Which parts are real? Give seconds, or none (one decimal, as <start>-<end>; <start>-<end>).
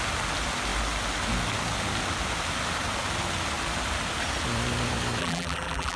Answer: 0.0-5.2